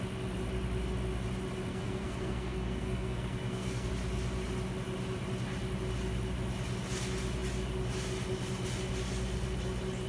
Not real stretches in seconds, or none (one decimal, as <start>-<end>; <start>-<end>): 1.7-3.9